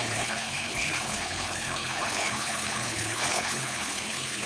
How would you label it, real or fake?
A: fake